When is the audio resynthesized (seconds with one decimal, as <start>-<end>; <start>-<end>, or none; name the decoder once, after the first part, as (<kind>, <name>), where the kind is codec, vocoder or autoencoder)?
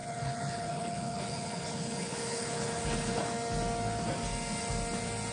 0.0-3.2 (codec, HILCodec)